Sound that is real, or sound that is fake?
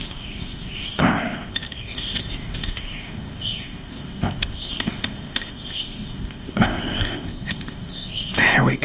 fake